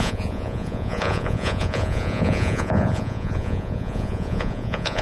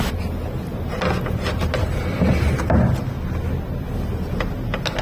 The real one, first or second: second